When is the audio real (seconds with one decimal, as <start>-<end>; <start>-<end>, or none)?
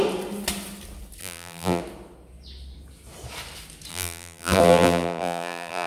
0.0-1.2; 1.8-3.9